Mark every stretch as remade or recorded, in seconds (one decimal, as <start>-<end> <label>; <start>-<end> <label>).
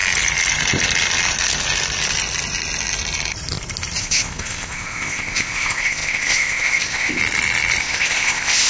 0.0-4.0 recorded; 4.0-7.2 remade; 7.2-7.8 recorded; 7.8-8.7 remade